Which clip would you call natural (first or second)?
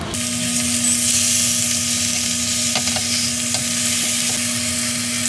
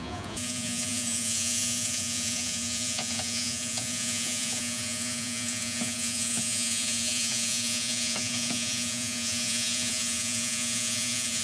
first